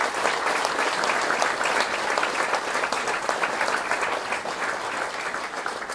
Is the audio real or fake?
real